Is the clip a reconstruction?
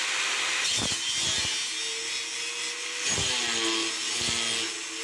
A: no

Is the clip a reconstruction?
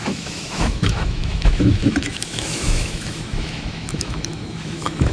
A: yes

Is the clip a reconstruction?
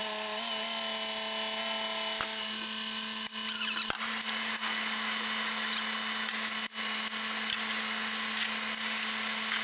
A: no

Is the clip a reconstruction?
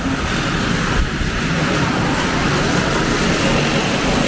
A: no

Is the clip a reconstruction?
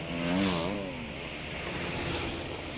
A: no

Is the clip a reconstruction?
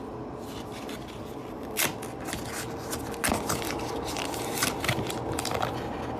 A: no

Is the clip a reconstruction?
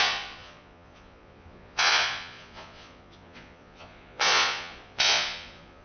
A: yes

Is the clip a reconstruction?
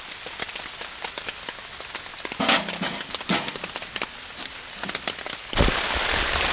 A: no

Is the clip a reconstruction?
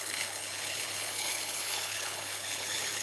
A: yes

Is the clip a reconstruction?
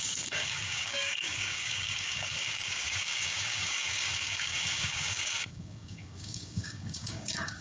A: yes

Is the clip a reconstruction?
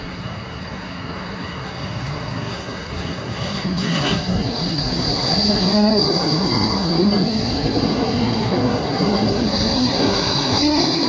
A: yes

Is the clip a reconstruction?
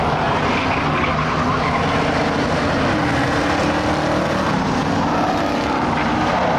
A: no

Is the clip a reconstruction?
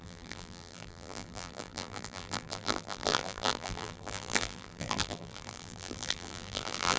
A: yes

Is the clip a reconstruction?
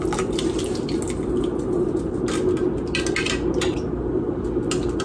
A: no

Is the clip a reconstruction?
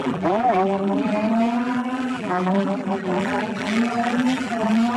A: yes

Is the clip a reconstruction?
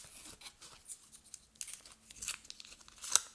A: no